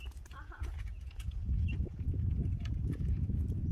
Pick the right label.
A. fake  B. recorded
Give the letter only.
A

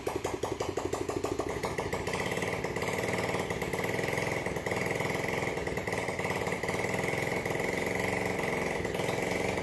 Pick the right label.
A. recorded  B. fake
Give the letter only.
A